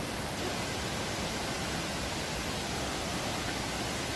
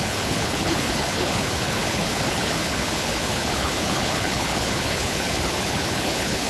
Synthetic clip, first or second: second